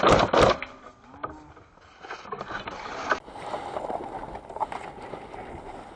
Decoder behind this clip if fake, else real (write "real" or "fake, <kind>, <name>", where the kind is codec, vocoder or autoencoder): real